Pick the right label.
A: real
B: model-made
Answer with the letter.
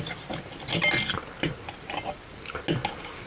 A